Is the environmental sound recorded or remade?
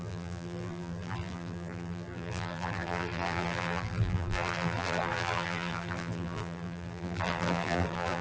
remade